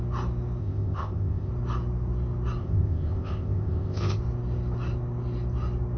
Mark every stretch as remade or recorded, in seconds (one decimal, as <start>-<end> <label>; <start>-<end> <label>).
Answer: 0.0-0.6 recorded; 0.6-1.5 remade; 1.5-2.6 recorded; 2.6-4.2 remade; 4.2-6.0 recorded